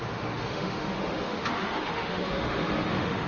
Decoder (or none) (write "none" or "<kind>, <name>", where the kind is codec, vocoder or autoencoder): autoencoder, DAC-VAE